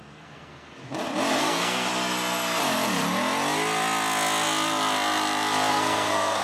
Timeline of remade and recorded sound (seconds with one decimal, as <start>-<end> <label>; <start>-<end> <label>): 0.0-0.8 remade; 0.8-1.4 recorded; 1.4-1.9 remade; 1.9-5.7 recorded; 5.7-6.4 remade